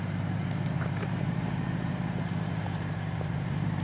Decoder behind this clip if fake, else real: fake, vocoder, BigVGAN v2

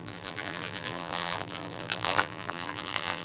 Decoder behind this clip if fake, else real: fake, vocoder, BigVGAN v2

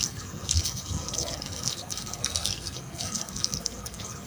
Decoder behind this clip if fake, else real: fake, codec, SNAC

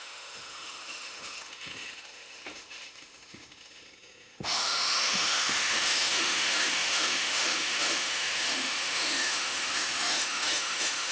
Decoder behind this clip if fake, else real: fake, autoencoder, DAC-VAE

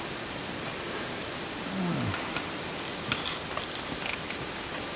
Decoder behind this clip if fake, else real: real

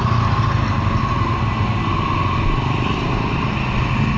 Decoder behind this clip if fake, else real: real